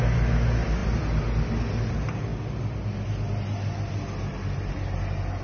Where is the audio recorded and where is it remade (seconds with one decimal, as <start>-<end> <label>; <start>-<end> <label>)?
0.0-5.4 recorded